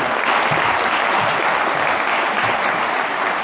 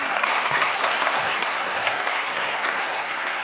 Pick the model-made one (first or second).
second